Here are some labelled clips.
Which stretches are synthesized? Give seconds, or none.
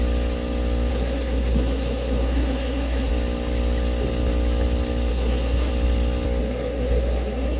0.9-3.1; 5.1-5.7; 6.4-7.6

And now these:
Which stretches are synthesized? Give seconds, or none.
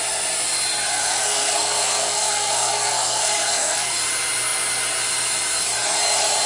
0.9-3.9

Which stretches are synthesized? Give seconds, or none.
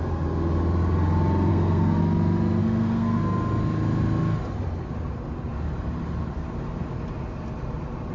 1.5-2.0; 2.6-3.2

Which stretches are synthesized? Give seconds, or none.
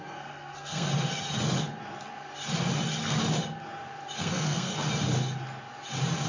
0.0-0.9; 4.2-4.7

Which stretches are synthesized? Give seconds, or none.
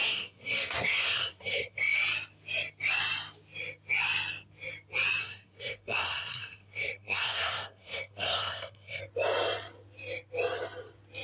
0.0-1.8; 5.2-9.0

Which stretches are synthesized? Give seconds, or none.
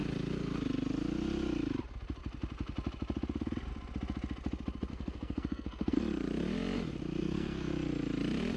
4.9-6.0; 7.2-7.7